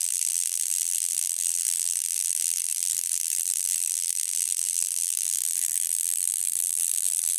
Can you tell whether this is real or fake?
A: fake